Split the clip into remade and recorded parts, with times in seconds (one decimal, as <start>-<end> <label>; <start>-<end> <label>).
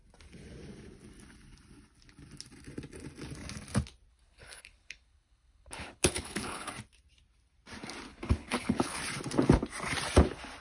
0.0-4.1 recorded; 4.1-6.7 remade; 6.7-8.1 recorded; 8.1-9.0 remade; 9.0-10.6 recorded